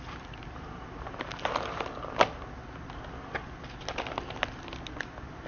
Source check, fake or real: real